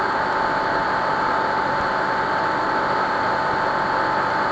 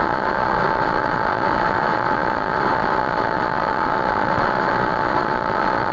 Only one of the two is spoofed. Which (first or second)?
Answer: second